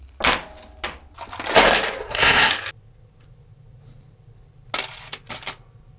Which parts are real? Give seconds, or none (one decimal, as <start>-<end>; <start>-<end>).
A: 0.0-2.0; 2.5-6.0